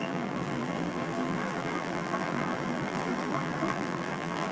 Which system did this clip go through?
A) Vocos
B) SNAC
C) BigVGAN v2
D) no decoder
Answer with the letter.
C